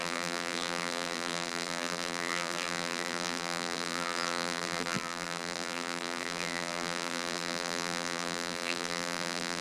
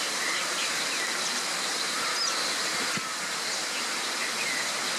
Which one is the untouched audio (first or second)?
second